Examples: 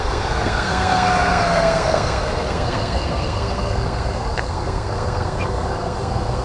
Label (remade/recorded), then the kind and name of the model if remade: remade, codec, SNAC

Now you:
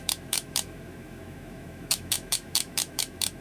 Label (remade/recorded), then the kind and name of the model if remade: remade, autoencoder, DAC-VAE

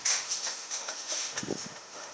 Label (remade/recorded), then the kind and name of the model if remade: remade, autoencoder, DAC-VAE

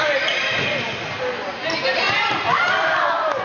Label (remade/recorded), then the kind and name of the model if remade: remade, vocoder, BigVGAN v2